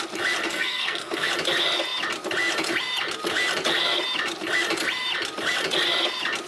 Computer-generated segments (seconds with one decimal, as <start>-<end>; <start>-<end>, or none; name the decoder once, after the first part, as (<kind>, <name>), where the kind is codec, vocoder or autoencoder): 0.4-1.3 (codec, SNAC)